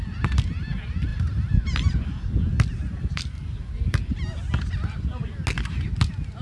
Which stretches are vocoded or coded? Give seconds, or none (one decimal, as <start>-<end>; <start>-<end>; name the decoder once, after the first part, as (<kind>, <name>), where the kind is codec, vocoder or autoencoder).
1.1-1.6 (vocoder, BigVGAN v2); 2.7-4.0